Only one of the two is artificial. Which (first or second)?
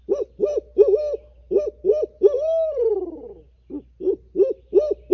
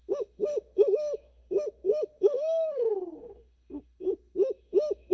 second